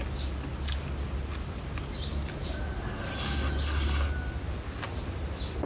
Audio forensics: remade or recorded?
recorded